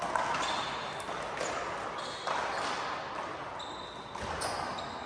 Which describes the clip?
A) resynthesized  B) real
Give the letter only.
B